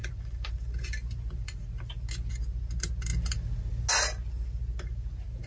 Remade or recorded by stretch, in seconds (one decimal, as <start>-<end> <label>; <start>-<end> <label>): 0.0-5.5 recorded

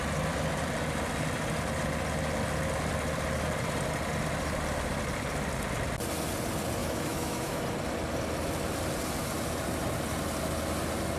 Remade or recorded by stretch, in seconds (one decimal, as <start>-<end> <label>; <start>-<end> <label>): 0.0-6.8 recorded; 6.8-7.6 remade; 7.6-11.2 recorded

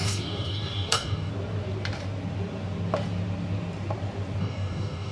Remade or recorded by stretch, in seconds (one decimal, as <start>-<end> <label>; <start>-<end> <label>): 0.0-1.3 remade; 1.3-4.4 recorded; 4.4-5.1 remade

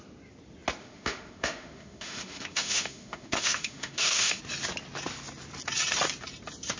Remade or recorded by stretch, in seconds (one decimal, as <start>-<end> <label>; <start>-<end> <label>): 0.0-0.8 recorded; 0.8-4.4 remade; 4.4-6.8 recorded

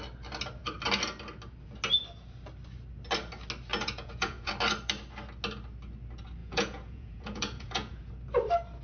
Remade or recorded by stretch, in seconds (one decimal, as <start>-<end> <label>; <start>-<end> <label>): 0.0-3.7 recorded; 3.7-4.5 remade; 4.5-6.4 recorded; 6.4-8.1 remade; 8.1-8.8 recorded